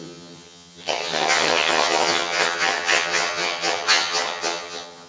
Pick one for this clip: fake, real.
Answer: fake